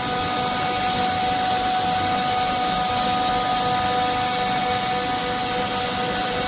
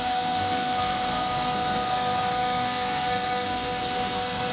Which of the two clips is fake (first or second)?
second